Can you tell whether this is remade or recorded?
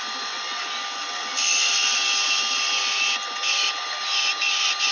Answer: recorded